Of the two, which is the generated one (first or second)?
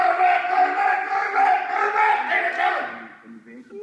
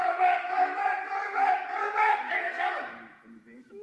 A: second